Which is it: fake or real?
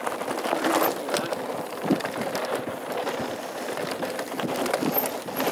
real